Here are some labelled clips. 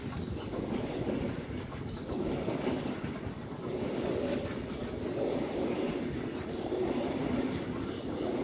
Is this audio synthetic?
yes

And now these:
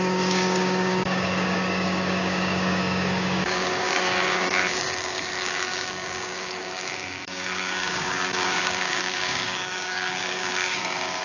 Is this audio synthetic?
yes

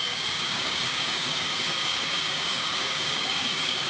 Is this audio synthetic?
yes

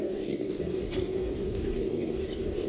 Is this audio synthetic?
yes